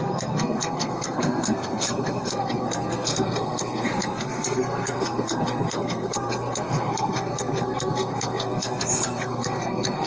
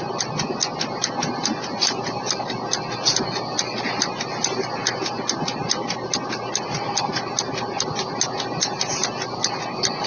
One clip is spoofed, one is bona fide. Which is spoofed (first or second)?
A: first